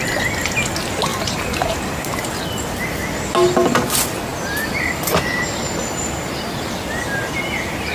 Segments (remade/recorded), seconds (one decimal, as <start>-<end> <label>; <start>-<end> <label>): 0.0-4.3 recorded; 4.3-5.3 remade; 5.3-5.8 recorded; 5.8-7.9 remade